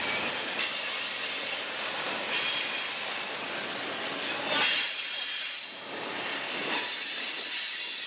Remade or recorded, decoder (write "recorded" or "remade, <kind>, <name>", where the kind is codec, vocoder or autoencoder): recorded